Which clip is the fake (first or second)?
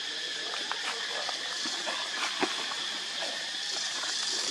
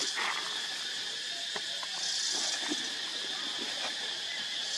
first